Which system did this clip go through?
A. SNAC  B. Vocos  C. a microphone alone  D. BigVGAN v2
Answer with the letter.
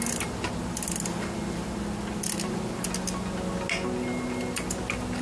C